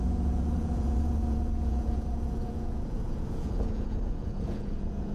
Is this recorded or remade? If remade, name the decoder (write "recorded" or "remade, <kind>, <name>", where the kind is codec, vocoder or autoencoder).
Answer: remade, vocoder, Vocos